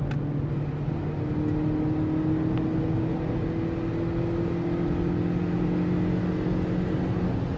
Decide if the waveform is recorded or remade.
recorded